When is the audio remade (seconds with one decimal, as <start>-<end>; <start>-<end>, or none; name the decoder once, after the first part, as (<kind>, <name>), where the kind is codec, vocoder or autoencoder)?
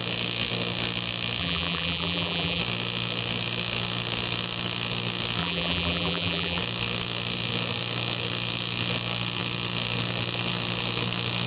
1.4-2.6 (vocoder, BigVGAN v2); 5.4-6.6